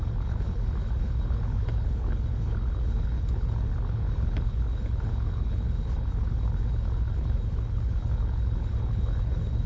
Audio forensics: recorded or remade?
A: remade